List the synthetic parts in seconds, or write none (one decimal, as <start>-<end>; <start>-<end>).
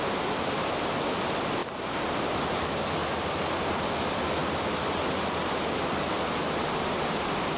0.0-1.6; 2.2-4.4; 6.2-7.6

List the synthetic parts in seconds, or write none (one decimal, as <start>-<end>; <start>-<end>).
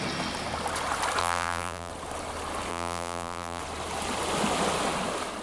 1.2-1.9; 2.7-3.6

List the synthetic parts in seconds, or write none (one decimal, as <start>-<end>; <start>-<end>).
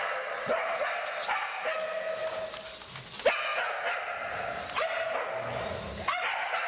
none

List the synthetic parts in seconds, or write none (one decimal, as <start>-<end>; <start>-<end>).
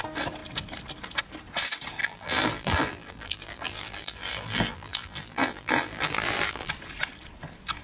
2.0-6.7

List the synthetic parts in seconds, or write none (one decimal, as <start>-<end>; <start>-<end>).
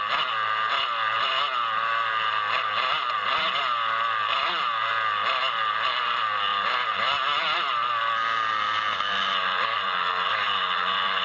6.5-7.9; 8.7-11.2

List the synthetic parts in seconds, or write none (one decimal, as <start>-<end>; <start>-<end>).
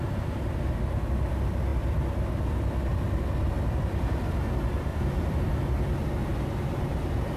1.7-2.2; 4.9-5.5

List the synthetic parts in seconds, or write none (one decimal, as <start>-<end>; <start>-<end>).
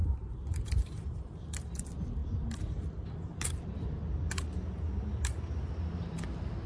0.0-1.8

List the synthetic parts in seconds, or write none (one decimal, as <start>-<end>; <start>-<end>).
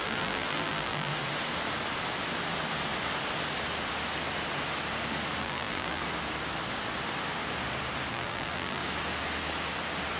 0.0-1.1; 5.4-6.0; 8.1-8.8